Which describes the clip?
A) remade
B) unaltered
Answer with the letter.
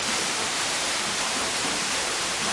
A